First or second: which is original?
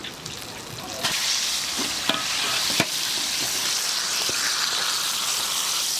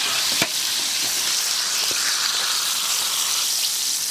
first